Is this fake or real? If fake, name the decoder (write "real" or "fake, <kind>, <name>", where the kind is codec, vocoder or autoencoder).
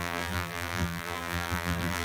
fake, vocoder, BigVGAN v2